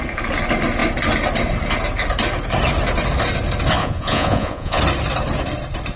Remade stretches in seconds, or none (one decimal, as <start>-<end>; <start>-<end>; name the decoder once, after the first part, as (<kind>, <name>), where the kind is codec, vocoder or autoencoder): 3.8-4.8 (vocoder, Vocos)